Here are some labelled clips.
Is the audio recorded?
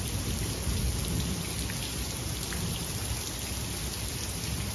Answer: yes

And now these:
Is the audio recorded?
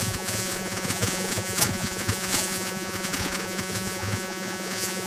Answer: no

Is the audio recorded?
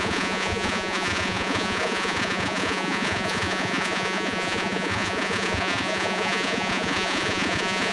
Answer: no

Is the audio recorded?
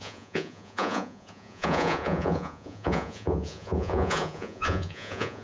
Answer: no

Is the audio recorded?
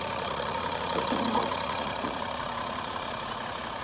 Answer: no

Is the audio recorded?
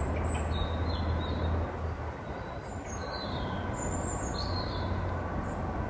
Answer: yes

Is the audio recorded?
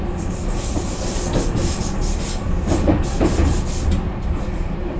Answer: yes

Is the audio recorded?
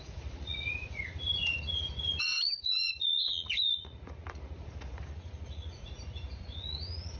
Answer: no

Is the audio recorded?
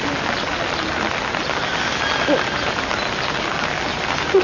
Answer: yes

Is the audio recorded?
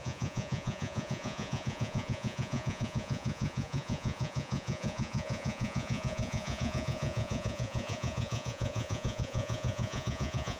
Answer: no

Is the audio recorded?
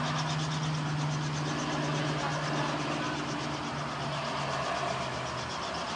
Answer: yes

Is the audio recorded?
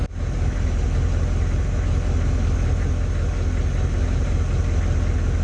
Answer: yes